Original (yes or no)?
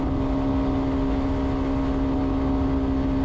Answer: yes